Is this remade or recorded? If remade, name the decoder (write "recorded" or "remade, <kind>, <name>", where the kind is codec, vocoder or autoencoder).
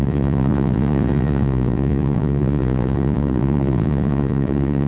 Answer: remade, vocoder, Vocos